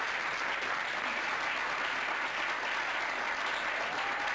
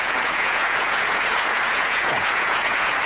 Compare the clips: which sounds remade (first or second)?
second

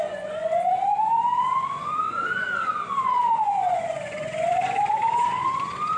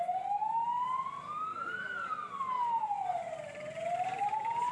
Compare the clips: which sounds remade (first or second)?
first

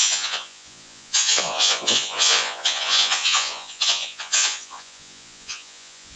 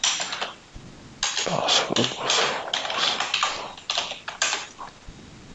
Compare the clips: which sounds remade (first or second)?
first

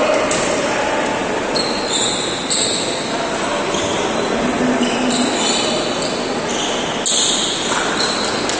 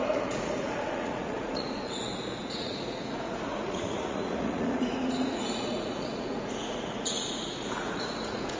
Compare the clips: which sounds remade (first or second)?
second